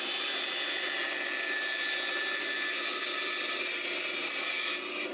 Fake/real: real